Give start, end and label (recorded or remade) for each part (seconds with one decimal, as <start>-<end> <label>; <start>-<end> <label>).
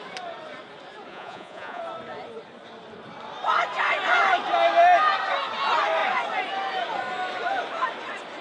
0.0-1.1 recorded; 1.1-1.8 remade; 1.8-8.4 recorded